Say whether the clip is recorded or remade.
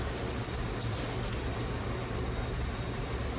recorded